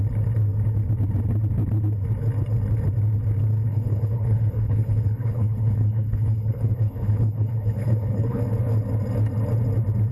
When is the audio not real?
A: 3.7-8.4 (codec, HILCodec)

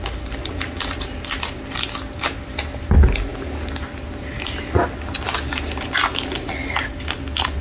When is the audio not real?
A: none

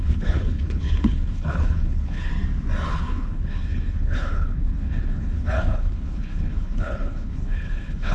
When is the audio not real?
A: 0.0-2.3 (codec, HILCodec); 2.9-8.1